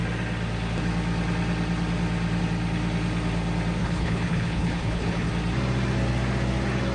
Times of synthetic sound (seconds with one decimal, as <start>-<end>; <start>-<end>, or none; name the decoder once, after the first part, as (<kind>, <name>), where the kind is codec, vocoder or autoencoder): 3.8-5.3 (codec, HILCodec)